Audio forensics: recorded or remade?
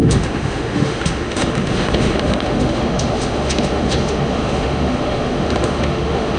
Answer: remade